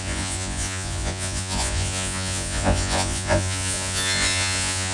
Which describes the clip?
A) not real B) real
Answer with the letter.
A